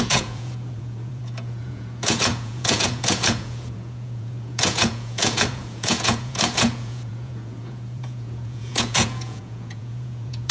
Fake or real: fake